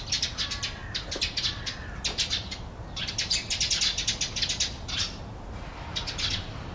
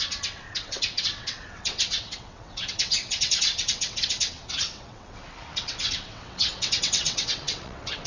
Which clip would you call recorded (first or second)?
first